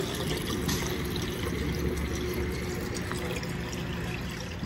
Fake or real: real